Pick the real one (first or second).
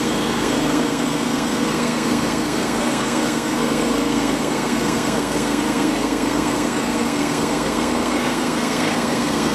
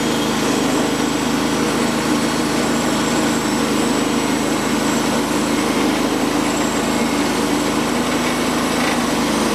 second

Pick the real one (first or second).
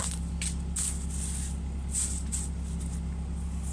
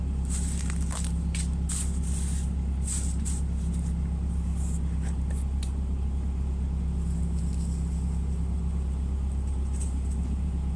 first